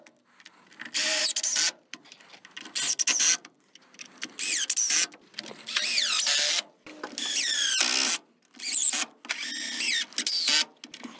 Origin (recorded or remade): recorded